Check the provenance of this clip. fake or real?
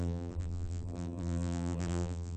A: fake